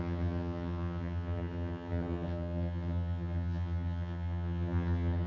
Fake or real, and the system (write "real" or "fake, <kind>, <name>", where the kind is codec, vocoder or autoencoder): fake, vocoder, HiFi-GAN